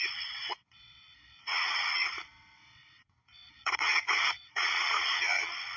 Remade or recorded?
remade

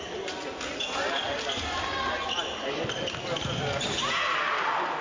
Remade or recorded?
recorded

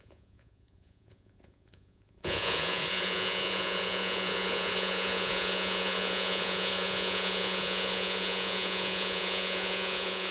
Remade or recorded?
remade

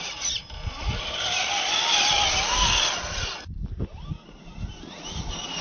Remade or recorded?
recorded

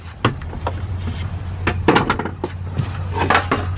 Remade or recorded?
recorded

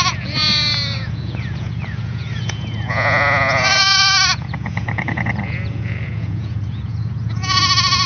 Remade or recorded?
remade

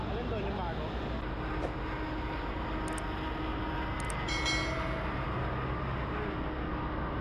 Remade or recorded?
recorded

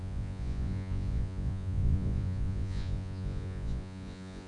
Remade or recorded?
remade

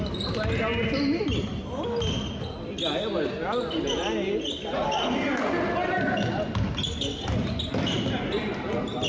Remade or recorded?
recorded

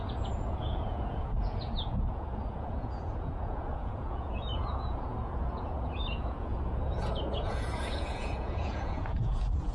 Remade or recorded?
remade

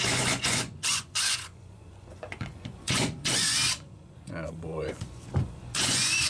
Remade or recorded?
remade